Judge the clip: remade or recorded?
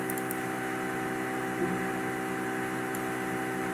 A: recorded